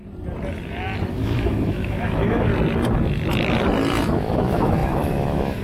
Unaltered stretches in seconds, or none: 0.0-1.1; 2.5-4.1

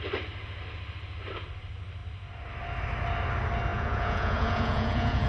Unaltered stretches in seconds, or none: 0.0-3.7

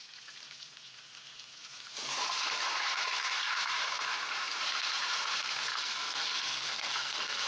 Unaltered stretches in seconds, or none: 0.0-5.7

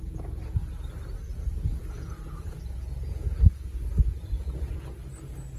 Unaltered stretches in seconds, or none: 0.6-1.3; 4.7-5.6

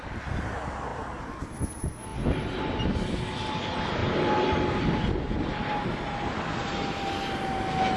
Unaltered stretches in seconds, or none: 0.0-2.1; 2.6-4.0; 6.2-8.0

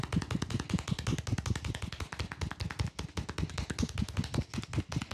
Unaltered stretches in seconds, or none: 0.0-5.1

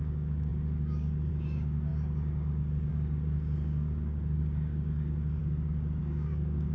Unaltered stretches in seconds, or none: none